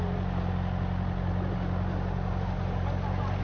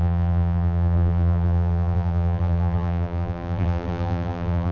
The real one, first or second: first